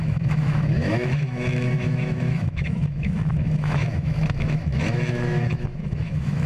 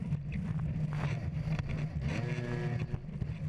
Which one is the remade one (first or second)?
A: first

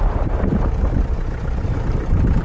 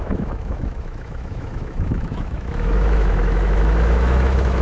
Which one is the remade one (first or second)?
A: second